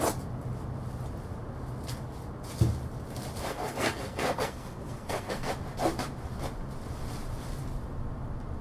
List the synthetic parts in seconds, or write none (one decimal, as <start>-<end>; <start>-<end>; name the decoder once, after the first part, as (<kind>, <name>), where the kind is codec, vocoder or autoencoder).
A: 3.5-5.5 (codec, SNAC)